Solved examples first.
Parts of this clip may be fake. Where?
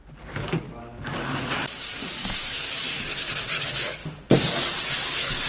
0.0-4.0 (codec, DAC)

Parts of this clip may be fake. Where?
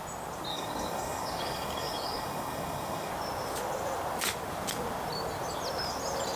0.5-3.1 (codec, DAC)